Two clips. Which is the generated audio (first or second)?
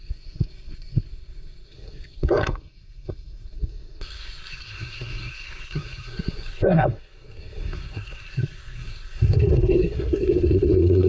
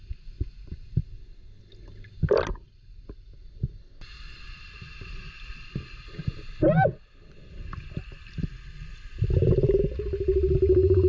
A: first